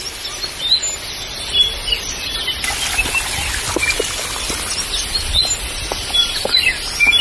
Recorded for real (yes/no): yes